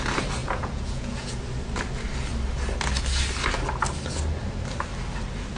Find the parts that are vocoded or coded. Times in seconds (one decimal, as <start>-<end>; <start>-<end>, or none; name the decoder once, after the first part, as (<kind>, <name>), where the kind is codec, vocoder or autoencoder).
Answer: 0.4-1.4 (vocoder, Vocos)